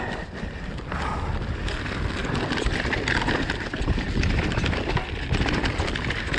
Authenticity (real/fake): real